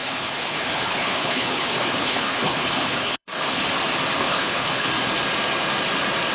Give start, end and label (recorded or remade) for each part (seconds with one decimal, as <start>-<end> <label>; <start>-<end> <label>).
0.0-3.6 remade; 3.6-4.2 recorded; 4.2-4.9 remade; 4.9-6.3 recorded